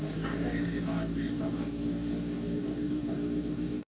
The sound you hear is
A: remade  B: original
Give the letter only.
A